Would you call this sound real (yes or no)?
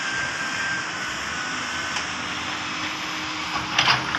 yes